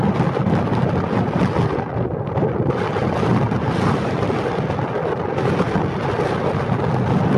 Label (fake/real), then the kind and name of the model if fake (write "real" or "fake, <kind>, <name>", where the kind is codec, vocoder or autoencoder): real